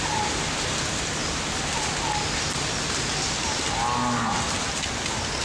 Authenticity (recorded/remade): recorded